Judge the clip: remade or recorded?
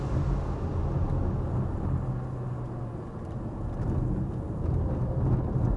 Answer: recorded